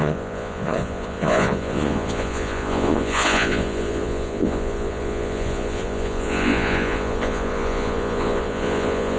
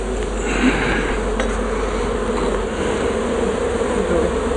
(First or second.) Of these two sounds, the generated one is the first